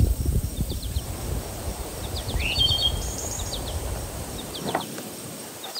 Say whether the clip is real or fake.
fake